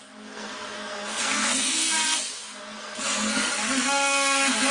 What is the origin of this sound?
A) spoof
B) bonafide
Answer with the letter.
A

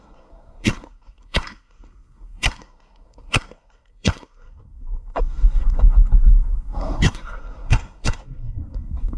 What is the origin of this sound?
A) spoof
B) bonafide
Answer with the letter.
A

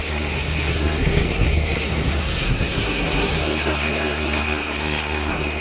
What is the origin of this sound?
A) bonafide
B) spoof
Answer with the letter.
B